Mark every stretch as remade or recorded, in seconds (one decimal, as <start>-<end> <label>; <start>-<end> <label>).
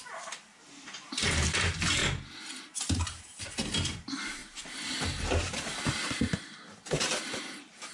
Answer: 0.0-2.0 remade; 2.0-2.6 recorded; 2.6-7.9 remade